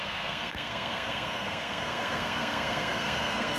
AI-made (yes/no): yes